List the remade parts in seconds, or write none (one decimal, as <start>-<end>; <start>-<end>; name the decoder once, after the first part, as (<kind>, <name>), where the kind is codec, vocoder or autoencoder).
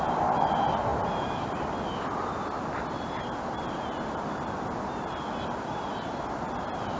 none